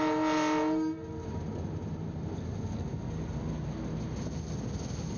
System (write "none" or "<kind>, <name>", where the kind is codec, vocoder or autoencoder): none